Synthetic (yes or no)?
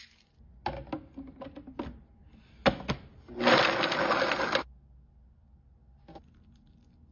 no